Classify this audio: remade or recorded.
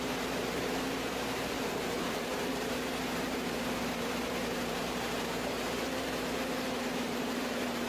remade